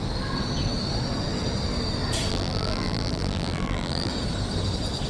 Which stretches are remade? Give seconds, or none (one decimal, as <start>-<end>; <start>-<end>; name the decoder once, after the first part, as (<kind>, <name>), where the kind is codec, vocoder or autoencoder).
2.3-4.1 (vocoder, BigVGAN v2)